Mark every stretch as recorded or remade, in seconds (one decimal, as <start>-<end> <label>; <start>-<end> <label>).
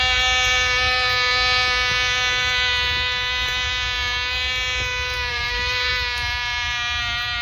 0.0-5.3 recorded; 5.3-5.9 remade; 5.9-7.4 recorded